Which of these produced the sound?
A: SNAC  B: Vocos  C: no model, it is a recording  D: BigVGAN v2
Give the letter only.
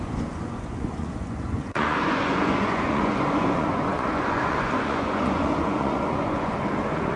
B